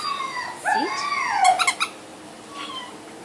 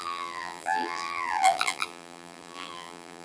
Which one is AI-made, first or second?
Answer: second